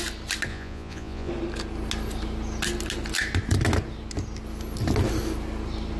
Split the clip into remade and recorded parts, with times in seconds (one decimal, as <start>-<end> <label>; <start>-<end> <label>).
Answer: 0.0-0.5 recorded; 0.5-1.3 remade; 1.3-6.0 recorded